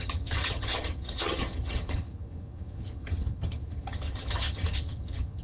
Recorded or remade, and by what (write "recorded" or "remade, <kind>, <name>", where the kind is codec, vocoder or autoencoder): remade, vocoder, HiFi-GAN